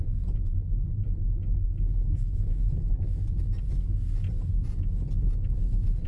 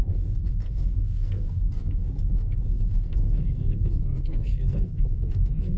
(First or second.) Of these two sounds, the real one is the first